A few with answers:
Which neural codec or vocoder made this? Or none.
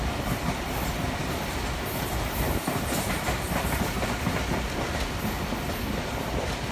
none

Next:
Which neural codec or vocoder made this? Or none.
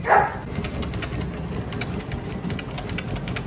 none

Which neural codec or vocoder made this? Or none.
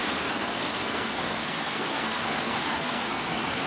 codec, SNAC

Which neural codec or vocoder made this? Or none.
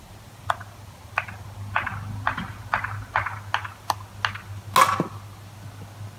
none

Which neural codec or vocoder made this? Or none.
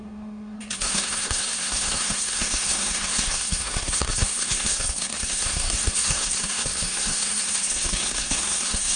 codec, SNAC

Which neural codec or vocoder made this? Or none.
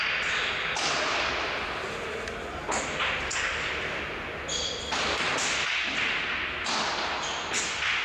none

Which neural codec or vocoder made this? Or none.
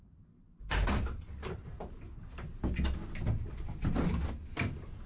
none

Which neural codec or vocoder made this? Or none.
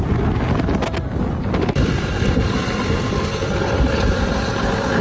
vocoder, BigVGAN v2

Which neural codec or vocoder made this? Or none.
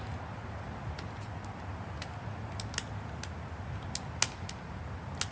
none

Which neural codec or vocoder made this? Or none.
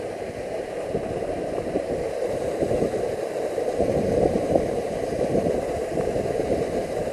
vocoder, BigVGAN v2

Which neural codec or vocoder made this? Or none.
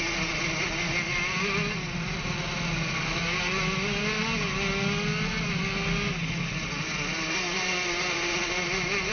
none